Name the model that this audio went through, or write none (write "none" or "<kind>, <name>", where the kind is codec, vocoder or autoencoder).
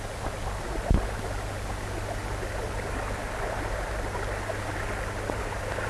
none